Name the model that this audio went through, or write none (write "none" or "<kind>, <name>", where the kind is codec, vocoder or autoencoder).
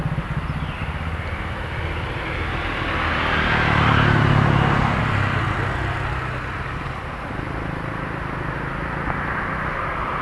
none